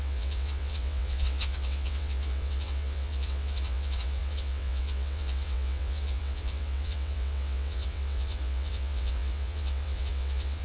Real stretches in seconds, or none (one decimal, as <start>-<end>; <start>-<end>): none